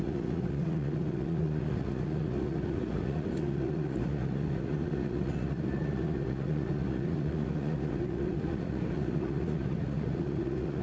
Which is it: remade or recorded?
remade